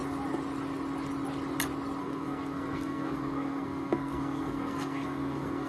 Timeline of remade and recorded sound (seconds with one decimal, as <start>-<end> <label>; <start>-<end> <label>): 0.0-2.0 recorded; 2.0-5.7 remade